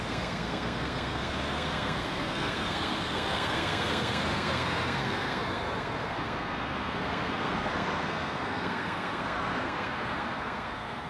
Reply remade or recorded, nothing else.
remade